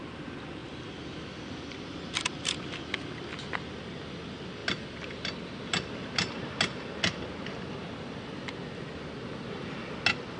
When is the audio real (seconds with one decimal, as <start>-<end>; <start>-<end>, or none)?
0.0-10.4